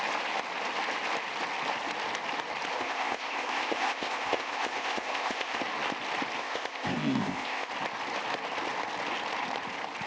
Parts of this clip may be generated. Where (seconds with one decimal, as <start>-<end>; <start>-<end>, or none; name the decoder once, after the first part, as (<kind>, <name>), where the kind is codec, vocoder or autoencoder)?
2.7-5.6 (codec, ZipCodec); 6.4-7.7